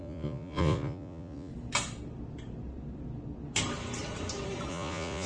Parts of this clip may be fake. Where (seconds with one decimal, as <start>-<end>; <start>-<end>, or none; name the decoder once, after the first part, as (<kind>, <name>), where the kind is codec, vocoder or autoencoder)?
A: 0.0-1.5 (vocoder, Vocos); 4.7-5.3